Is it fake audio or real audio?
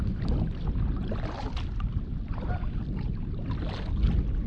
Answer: real